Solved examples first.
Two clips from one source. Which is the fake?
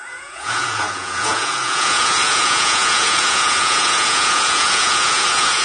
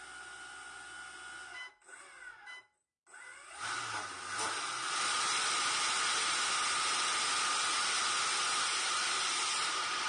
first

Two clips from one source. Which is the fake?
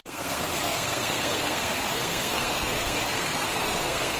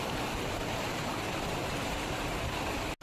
first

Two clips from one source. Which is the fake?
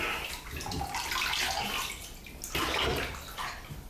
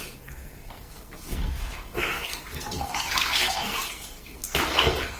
second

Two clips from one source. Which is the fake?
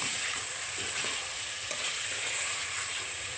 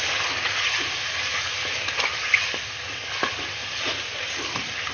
first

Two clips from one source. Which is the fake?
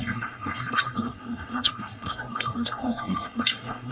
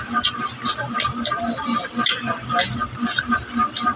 first